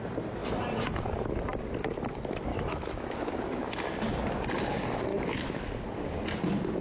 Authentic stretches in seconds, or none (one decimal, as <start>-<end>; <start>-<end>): 0.0-2.5; 3.7-5.1; 5.6-6.8